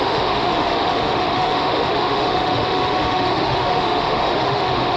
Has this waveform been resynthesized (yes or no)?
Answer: yes